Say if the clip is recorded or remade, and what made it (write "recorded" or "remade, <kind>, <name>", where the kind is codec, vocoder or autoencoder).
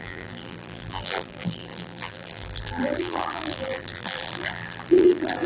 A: remade, vocoder, BigVGAN v2